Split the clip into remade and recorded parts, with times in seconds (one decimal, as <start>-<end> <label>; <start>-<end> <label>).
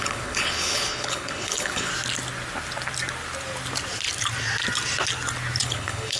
0.0-1.9 remade; 1.9-5.6 recorded; 5.6-6.2 remade